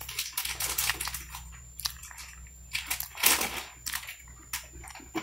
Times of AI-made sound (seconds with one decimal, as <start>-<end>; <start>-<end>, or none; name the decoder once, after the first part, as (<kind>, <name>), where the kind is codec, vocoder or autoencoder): none